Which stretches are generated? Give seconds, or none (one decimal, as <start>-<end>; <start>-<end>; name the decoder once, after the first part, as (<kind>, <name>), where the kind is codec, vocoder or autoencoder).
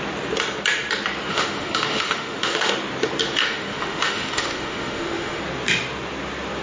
1.3-2.7 (autoencoder, DAC-VAE); 3.4-5.4